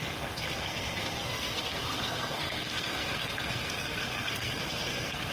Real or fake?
fake